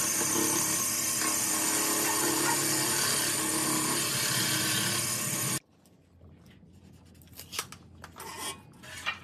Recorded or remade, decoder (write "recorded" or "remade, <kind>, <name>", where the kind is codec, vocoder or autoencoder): recorded